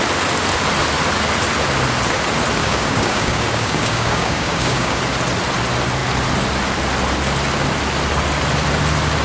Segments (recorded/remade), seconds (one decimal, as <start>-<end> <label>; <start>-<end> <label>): 0.0-2.6 recorded; 2.6-5.0 remade; 5.0-9.2 recorded